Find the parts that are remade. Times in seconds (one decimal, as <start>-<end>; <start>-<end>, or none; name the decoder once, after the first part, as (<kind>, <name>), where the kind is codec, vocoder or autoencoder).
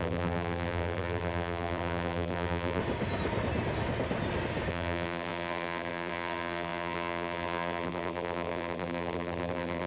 0.0-2.8 (vocoder, BigVGAN v2); 4.7-9.9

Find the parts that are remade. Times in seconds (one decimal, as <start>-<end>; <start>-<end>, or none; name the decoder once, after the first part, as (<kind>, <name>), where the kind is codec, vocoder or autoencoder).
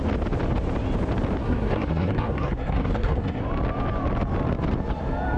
1.4-3.4 (codec, SNAC)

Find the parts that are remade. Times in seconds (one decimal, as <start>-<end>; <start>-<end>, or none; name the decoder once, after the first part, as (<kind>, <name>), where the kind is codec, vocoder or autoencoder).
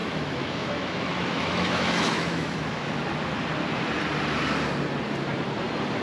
0.0-3.0 (autoencoder, DAC-VAE)